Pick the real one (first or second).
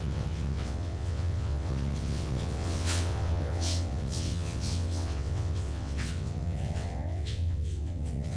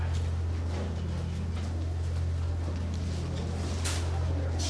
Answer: second